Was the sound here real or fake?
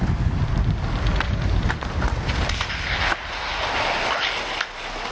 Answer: real